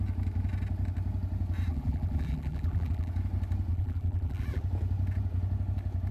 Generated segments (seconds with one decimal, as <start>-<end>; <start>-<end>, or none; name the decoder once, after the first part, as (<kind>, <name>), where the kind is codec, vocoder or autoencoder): 1.7-3.1 (vocoder, BigVGAN v2); 3.7-4.6